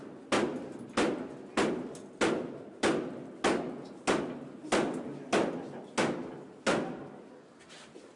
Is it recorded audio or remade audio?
recorded